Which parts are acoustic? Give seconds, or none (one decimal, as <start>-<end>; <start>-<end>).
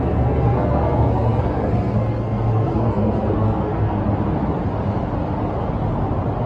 4.0-6.5